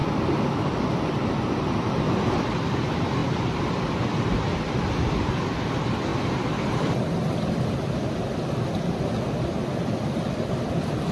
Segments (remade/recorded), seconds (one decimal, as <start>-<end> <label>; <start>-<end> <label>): 0.0-6.1 recorded; 6.1-7.1 remade; 7.1-11.1 recorded